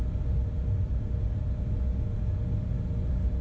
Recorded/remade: recorded